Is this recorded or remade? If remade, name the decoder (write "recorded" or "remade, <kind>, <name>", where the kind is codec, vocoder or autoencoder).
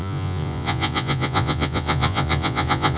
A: remade, vocoder, Vocos